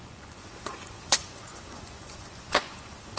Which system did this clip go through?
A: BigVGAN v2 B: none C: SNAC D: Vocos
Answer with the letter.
D